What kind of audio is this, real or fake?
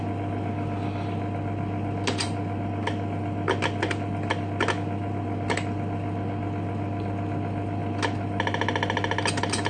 real